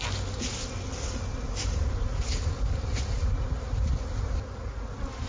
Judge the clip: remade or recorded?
recorded